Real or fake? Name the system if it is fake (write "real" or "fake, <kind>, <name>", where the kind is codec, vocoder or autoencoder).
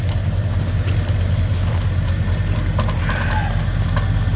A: real